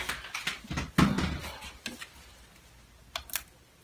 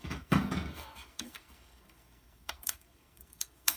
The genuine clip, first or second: first